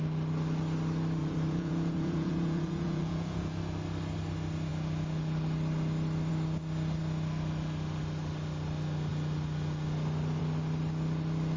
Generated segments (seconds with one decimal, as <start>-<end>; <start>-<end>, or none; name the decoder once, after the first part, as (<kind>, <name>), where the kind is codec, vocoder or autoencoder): 1.2-3.6 (vocoder, Vocos)